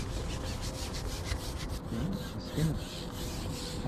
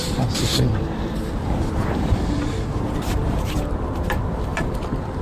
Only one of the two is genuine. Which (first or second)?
first